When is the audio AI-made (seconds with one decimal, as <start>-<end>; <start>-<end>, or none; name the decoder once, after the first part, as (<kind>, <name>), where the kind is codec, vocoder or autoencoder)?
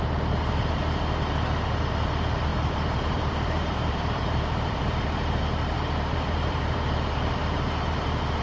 2.5-7.3 (vocoder, BigVGAN v2)